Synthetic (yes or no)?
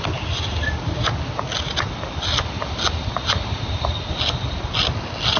no